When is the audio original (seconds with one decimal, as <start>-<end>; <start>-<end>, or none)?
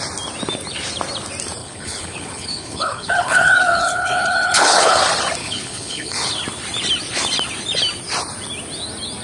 0.0-1.6; 5.0-5.4; 6.3-9.2